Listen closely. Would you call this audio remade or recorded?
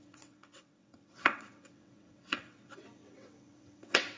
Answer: remade